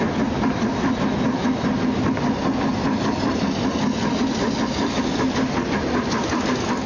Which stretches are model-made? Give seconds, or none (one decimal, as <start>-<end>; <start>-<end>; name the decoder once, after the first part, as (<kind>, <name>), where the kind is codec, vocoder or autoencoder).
none

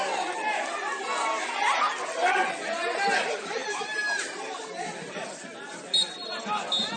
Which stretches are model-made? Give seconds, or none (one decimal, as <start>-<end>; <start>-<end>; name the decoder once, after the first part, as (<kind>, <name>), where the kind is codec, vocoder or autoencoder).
none

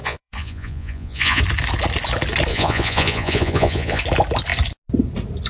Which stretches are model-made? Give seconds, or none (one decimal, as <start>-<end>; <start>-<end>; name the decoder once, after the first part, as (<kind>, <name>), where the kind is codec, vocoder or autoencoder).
0.0-1.4 (vocoder, Vocos); 2.5-4.0

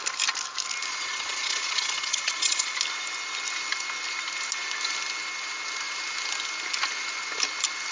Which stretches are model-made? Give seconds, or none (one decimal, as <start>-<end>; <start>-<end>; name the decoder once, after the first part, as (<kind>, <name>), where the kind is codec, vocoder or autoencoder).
0.9-2.8 (vocoder, Vocos)

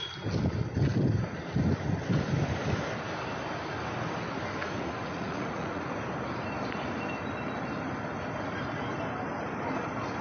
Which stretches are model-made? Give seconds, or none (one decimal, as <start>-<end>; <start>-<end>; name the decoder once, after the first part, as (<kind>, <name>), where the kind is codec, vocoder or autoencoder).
4.6-5.8 (vocoder, Vocos)

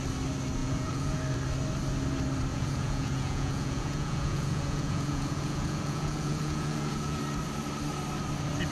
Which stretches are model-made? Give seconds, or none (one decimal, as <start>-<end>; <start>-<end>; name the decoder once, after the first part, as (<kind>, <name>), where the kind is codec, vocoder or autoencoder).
0.6-1.2 (vocoder, Vocos); 2.5-7.2

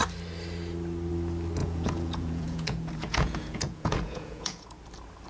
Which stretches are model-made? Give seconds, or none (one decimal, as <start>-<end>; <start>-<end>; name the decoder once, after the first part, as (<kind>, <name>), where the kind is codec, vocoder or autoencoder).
1.6-4.8 (vocoder, Vocos)